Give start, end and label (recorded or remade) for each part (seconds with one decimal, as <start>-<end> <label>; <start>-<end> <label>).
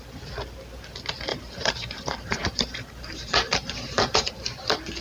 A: 0.0-1.3 recorded; 1.3-4.3 remade; 4.3-5.0 recorded